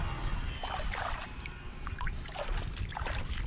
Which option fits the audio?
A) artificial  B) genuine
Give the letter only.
B